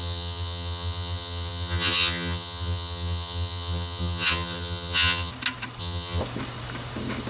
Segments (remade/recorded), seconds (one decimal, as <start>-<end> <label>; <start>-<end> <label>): 0.0-5.3 remade; 5.3-5.8 recorded; 5.8-6.2 remade; 6.2-7.3 recorded